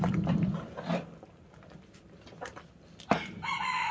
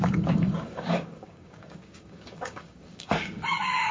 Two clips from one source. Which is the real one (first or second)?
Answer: first